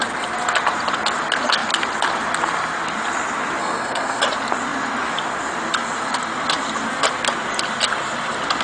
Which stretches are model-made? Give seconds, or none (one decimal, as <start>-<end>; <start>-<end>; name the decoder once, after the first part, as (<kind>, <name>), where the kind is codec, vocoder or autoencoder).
3.6-4.2 (codec, SNAC)

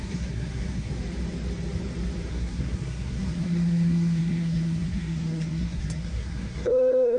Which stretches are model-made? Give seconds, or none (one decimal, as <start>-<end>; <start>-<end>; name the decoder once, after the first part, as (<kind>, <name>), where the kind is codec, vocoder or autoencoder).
0.0-0.9 (codec, SNAC); 2.3-7.2

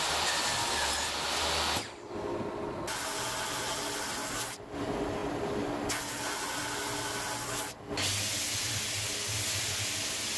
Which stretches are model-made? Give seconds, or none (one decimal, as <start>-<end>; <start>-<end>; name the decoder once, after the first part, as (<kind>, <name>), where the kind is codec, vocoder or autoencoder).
none

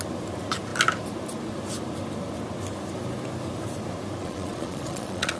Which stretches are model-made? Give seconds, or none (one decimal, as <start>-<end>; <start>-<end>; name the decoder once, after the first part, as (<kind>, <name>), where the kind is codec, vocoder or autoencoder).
4.2-5.4 (vocoder, Vocos)

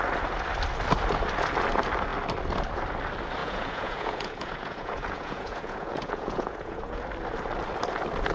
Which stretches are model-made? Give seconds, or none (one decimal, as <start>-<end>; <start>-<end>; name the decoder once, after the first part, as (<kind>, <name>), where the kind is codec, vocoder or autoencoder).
3.4-7.0 (vocoder, Vocos)

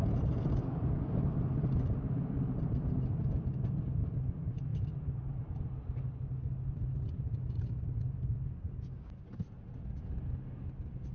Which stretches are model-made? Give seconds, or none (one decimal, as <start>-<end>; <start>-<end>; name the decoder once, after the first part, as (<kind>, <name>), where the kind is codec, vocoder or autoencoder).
none

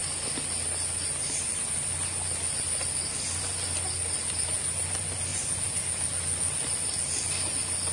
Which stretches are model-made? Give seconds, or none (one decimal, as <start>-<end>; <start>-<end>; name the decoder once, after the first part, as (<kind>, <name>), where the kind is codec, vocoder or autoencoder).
5.3-5.8 (vocoder, Vocos)

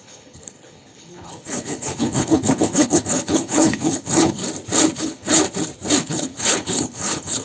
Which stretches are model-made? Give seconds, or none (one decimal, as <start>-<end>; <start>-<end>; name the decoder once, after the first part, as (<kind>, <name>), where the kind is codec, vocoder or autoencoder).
0.0-4.4 (codec, HILCodec); 5.0-5.4; 6.0-7.4